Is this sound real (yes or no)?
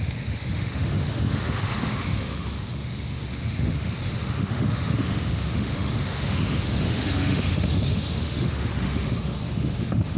no